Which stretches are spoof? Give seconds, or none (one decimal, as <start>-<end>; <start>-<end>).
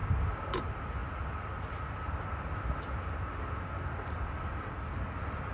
none